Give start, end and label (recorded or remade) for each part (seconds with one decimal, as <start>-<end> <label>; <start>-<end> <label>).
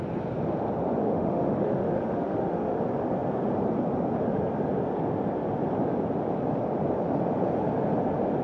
0.0-1.0 recorded; 1.0-2.8 remade; 2.8-8.4 recorded